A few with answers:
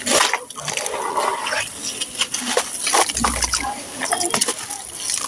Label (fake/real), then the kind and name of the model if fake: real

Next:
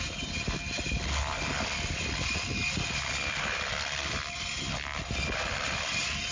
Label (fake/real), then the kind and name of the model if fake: real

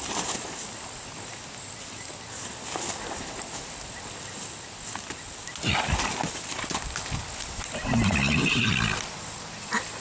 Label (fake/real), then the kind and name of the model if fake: real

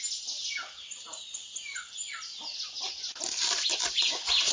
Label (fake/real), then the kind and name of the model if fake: real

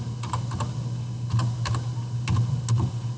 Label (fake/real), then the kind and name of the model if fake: real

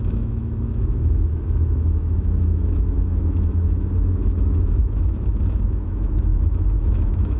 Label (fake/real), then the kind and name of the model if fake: fake, autoencoder, DAC-VAE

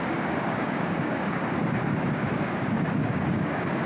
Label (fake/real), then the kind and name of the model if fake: fake, codec, DAC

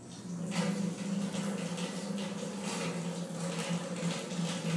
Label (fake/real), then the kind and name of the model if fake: real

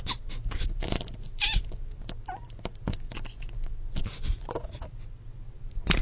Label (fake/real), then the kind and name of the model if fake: real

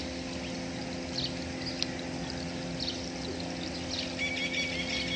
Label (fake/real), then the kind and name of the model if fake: real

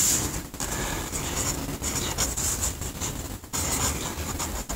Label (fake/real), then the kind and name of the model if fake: real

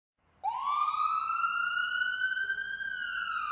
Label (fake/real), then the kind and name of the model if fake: real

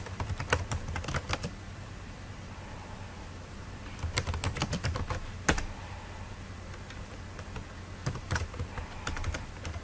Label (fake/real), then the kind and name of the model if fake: real